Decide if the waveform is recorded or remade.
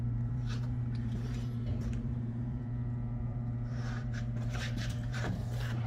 remade